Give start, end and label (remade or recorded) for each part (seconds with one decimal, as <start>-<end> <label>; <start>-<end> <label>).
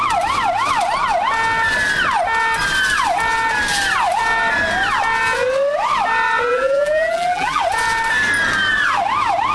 0.0-6.5 recorded; 6.5-7.6 remade; 7.6-9.5 recorded